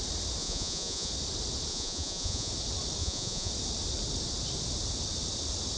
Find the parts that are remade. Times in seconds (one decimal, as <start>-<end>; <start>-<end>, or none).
0.4-1.1; 1.7-2.5; 3.0-3.5